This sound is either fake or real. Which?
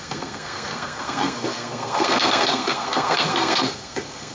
fake